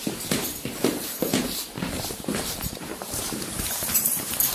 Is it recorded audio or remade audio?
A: remade